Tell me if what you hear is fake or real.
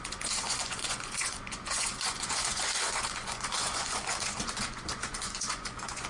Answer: fake